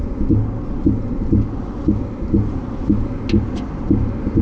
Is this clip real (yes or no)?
yes